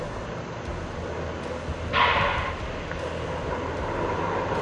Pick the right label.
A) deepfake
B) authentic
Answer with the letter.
B